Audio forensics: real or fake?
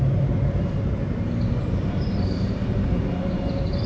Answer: fake